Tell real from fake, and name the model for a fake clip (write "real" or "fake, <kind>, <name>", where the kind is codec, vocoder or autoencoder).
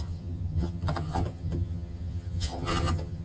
fake, vocoder, HiFi-GAN